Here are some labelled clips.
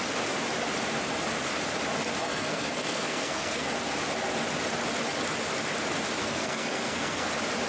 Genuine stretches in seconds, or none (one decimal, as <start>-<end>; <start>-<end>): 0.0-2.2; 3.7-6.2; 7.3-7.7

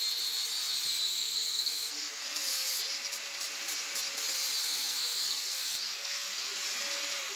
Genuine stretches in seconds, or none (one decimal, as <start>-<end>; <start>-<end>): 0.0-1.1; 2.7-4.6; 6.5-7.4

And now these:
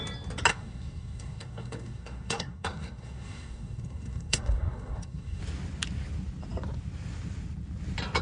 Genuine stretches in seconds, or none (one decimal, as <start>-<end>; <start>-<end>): 0.0-0.5; 5.4-8.2